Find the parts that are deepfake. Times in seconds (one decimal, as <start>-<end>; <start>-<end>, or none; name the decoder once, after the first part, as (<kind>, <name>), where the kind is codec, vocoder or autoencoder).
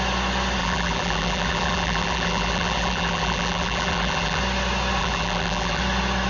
0.6-4.4 (vocoder, BigVGAN v2); 5.0-5.8